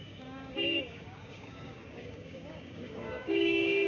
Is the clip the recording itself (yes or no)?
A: no